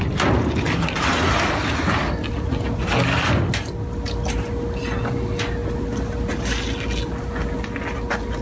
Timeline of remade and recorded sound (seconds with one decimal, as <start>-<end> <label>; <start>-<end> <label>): 0.0-8.4 recorded